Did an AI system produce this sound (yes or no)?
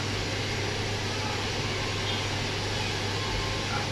no